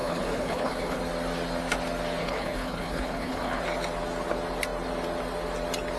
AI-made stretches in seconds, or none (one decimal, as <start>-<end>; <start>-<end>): 0.0-1.0; 2.2-3.6

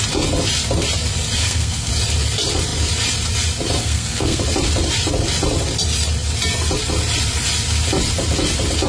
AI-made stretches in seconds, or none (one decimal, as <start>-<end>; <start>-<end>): 1.4-1.9; 3.8-4.4